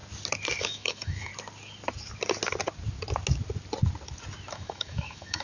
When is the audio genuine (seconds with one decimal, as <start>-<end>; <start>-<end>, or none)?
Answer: 0.0-0.6; 1.3-4.5